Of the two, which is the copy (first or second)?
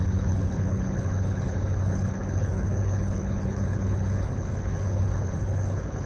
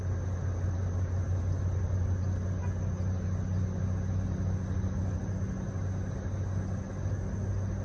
first